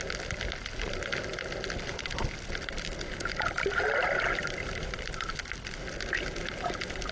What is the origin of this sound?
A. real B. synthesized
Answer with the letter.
A